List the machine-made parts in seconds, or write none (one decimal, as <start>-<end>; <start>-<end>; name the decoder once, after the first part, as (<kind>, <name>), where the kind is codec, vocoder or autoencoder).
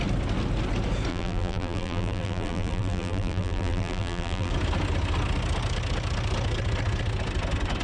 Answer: 1.1-4.5 (vocoder, BigVGAN v2)